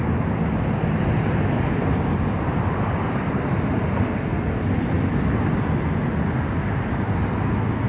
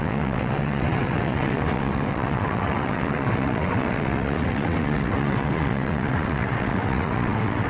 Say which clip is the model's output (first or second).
second